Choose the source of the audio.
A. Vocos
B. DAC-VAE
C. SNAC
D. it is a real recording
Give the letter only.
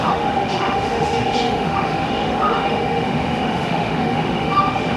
B